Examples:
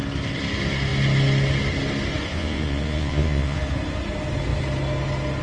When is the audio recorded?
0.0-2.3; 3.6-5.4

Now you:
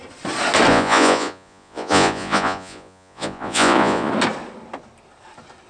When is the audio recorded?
0.0-0.7; 4.1-5.7

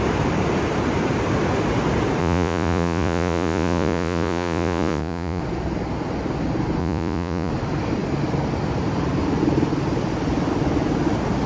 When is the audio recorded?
0.0-2.2; 5.4-6.8; 7.5-11.5

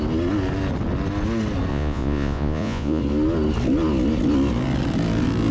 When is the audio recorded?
0.0-1.7; 3.0-5.5

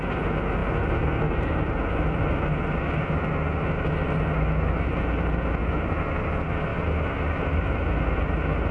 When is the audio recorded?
0.0-8.7